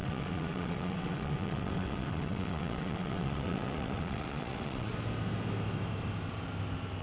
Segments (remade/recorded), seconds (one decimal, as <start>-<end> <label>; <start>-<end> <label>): 0.0-4.9 remade; 4.9-7.0 recorded